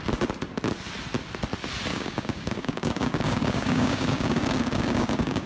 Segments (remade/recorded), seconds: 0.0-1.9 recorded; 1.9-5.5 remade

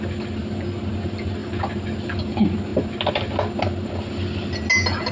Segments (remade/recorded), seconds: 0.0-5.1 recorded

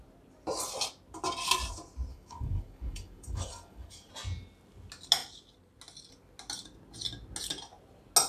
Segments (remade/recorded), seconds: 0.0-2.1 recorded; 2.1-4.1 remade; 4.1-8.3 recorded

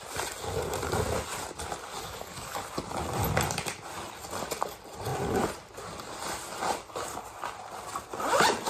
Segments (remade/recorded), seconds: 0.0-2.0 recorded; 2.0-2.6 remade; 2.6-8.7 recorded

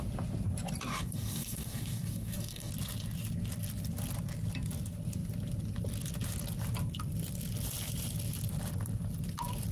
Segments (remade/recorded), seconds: 0.0-0.9 recorded; 0.9-2.7 remade; 2.7-9.7 recorded

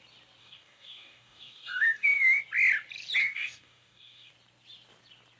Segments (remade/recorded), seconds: 0.0-0.4 recorded; 0.4-2.4 remade; 2.4-3.2 recorded; 3.2-4.3 remade; 4.3-5.4 recorded